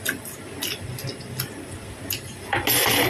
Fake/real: real